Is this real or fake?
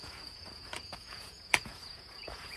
fake